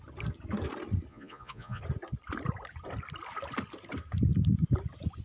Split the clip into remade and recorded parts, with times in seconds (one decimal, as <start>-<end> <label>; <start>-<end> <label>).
0.0-1.1 recorded; 1.1-1.8 remade; 1.8-5.2 recorded